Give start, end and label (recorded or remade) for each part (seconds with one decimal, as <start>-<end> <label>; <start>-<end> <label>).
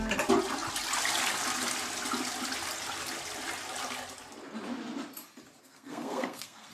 0.0-5.6 recorded; 5.6-6.7 remade